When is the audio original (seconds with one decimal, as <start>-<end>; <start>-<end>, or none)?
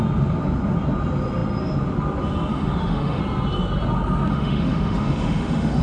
0.0-2.5; 3.2-4.3